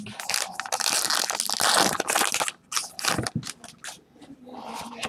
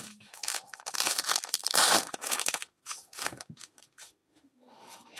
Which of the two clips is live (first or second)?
first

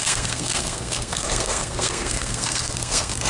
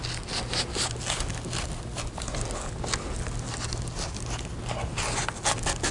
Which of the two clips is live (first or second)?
second